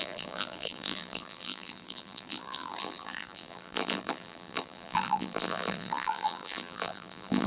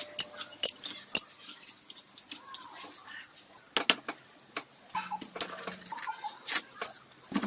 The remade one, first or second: first